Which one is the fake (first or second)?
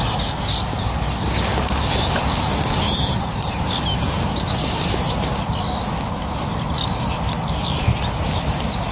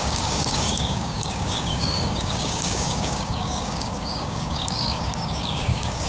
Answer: second